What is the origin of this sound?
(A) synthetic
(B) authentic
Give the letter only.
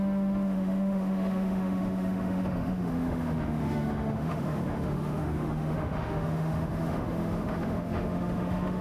A